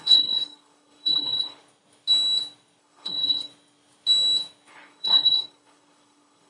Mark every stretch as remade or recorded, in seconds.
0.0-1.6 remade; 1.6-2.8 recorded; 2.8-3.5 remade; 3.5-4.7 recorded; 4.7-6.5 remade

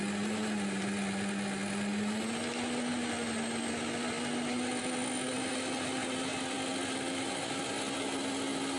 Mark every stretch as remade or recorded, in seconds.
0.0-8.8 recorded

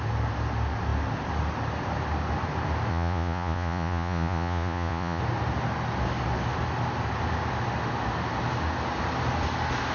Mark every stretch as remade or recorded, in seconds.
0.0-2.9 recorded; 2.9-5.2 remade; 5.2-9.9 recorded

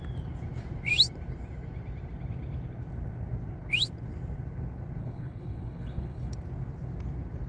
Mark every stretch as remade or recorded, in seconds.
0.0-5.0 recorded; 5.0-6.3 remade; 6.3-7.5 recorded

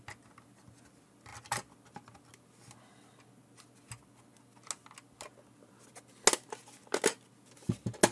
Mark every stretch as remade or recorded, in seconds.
0.0-8.1 recorded